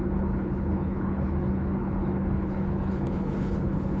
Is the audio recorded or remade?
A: remade